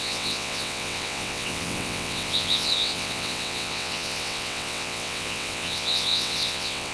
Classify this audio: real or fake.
fake